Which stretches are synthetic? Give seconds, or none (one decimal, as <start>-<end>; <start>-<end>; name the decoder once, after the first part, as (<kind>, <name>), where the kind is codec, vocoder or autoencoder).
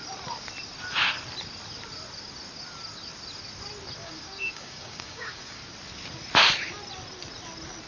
4.0-5.6 (codec, DAC)